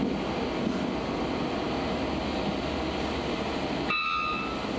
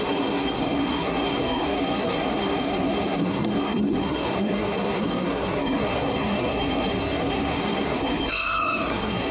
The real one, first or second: first